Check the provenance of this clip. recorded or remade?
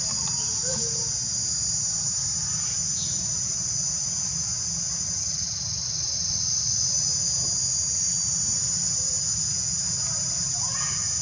recorded